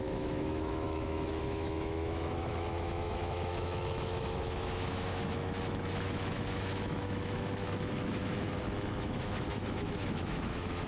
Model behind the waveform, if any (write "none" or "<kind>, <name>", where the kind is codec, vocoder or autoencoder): autoencoder, DAC-VAE